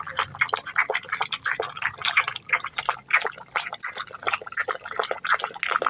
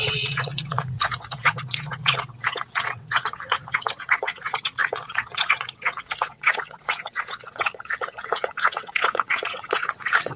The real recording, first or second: first